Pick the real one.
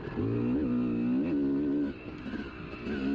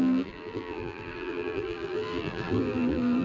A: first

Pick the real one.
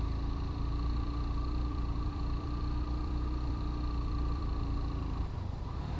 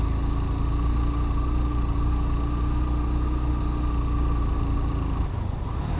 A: second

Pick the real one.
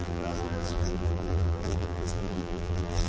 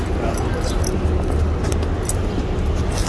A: second